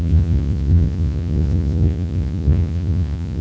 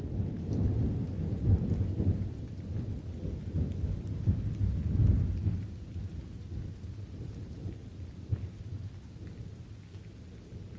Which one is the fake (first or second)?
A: first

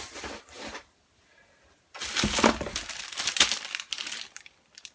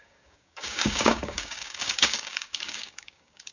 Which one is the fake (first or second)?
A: second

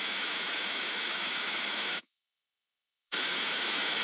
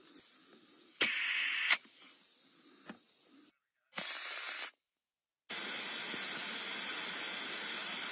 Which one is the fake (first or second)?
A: first